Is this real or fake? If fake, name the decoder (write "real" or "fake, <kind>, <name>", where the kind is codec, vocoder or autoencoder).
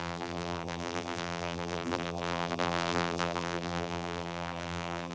fake, vocoder, BigVGAN v2